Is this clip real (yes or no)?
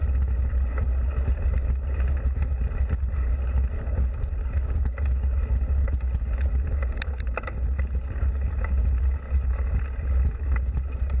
yes